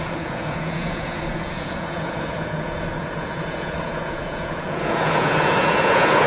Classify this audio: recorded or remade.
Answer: remade